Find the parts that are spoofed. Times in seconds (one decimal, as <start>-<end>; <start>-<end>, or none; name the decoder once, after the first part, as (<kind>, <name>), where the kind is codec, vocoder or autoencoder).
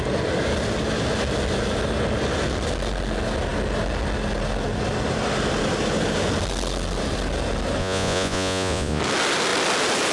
7.8-9.0 (vocoder, Vocos)